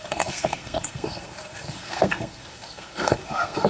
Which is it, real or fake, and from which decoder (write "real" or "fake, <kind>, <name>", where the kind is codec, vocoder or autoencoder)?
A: fake, codec, SNAC